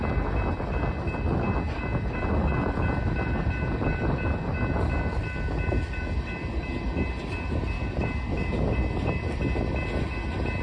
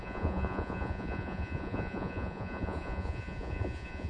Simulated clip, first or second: second